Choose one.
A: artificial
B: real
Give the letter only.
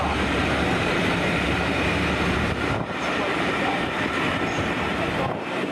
A